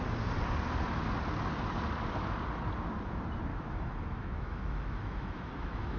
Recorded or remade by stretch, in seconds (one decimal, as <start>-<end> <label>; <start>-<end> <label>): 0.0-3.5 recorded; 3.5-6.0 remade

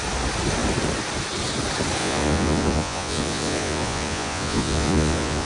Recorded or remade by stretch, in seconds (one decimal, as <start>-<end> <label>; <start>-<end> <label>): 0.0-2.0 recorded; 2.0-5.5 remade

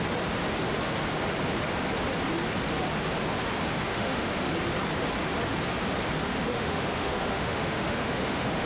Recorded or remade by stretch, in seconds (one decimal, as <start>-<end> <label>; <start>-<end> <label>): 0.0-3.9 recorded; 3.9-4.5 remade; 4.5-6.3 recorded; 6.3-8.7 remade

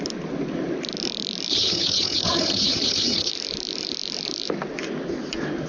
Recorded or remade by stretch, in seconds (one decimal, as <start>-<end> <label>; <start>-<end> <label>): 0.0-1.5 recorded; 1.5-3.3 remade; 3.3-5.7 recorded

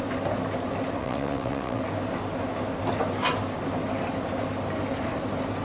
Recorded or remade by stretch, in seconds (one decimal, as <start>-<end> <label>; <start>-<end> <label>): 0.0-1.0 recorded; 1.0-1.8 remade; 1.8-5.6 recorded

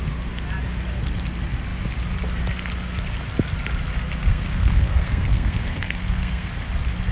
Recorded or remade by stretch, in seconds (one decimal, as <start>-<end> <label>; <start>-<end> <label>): 0.0-4.3 recorded; 4.3-6.5 remade; 6.5-7.1 recorded

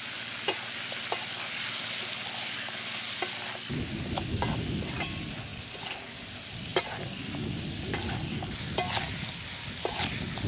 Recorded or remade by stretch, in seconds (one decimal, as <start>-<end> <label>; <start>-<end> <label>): 0.0-10.5 recorded

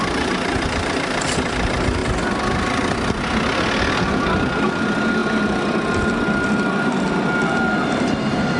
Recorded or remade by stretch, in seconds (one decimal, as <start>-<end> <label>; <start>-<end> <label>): 0.0-2.0 remade; 2.0-4.6 recorded; 4.6-8.6 remade